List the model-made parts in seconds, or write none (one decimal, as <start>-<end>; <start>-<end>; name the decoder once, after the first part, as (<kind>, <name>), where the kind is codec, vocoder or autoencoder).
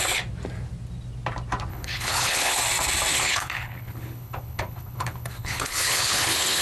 1.7-2.6 (codec, HILCodec); 3.1-6.6